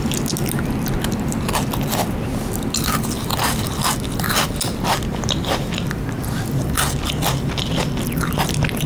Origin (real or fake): real